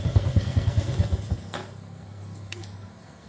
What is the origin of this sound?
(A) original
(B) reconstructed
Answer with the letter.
B